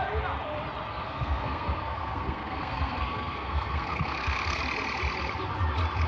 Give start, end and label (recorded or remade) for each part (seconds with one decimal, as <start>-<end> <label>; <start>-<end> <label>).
0.0-0.9 recorded; 0.9-4.6 remade; 4.6-6.1 recorded